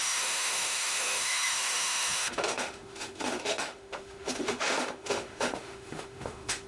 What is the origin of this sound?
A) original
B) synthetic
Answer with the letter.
B